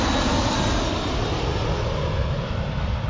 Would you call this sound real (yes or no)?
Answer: yes